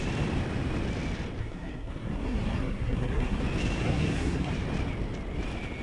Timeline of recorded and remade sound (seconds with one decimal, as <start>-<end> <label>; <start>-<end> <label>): 0.0-1.4 recorded; 1.4-3.4 remade; 3.4-3.8 recorded; 3.8-4.5 remade; 4.5-5.8 recorded